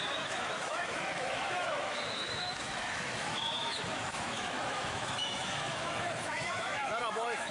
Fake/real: fake